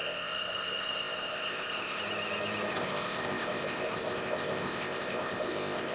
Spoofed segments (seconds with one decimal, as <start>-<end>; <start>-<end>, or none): 0.0-2.0; 2.7-5.9